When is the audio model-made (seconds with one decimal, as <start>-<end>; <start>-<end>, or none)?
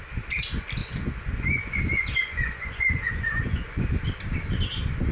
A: 0.8-3.9